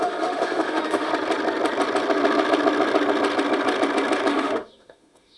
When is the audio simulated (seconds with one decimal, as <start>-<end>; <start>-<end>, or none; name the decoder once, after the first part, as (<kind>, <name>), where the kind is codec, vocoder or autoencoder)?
0.0-1.1 (autoencoder, DAC-VAE); 4.3-5.4